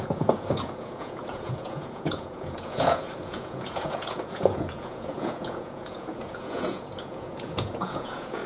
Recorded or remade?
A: remade